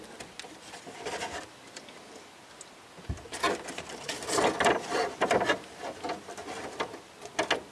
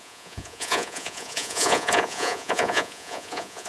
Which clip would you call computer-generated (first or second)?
second